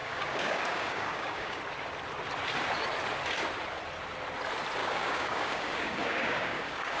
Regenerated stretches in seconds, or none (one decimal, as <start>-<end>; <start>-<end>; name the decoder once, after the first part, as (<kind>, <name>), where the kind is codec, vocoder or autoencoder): 0.0-1.6 (codec, DAC); 4.8-7.0